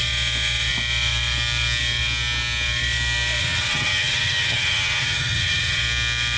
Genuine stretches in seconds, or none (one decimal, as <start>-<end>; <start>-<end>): 0.0-3.4; 5.8-6.4